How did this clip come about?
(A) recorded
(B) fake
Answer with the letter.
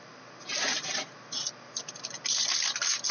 A